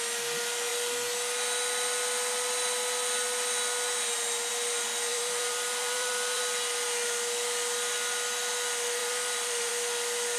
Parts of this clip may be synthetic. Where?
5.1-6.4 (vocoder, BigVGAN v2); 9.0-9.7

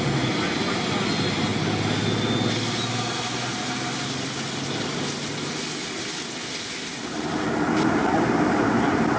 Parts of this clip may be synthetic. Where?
none

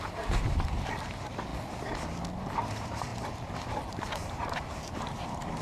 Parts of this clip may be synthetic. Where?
0.0-1.5 (vocoder, BigVGAN v2); 2.6-5.6

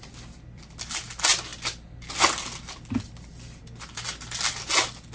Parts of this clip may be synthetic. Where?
1.5-4.6 (vocoder, BigVGAN v2)